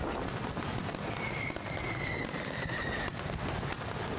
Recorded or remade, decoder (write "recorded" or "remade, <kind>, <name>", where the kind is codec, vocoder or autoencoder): recorded